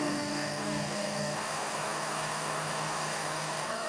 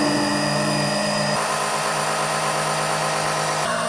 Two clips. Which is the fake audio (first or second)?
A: first